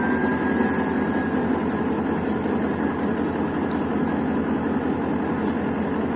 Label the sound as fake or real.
real